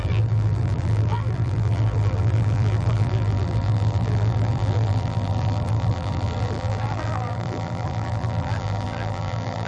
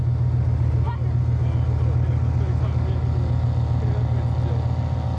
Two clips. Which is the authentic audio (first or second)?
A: second